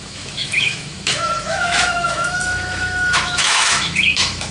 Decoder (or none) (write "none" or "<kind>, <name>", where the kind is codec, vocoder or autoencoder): autoencoder, DAC-VAE